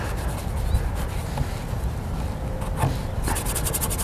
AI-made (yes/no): no